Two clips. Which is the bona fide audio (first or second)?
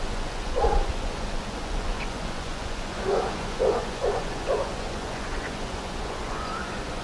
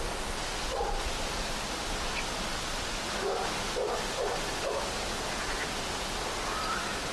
second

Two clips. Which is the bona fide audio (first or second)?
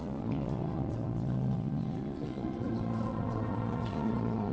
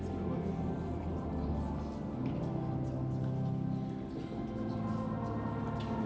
second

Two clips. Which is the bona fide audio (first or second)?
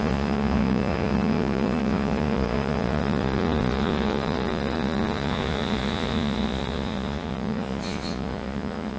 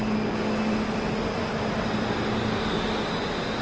second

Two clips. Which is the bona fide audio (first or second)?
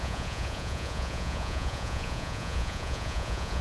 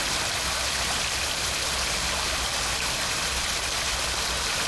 second